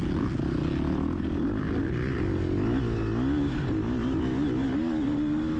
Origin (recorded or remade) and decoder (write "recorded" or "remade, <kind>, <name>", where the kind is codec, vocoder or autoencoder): recorded